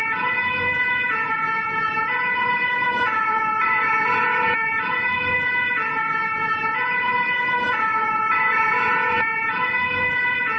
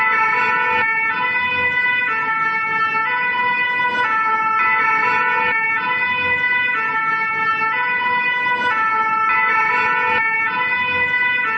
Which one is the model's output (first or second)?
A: first